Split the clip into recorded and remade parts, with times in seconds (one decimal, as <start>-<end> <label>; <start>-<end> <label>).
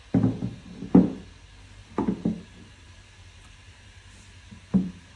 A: 0.0-5.2 recorded